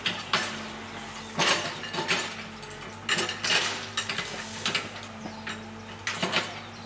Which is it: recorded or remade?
recorded